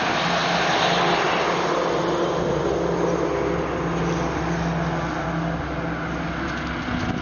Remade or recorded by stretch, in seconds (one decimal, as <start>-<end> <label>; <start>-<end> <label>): 0.0-7.2 recorded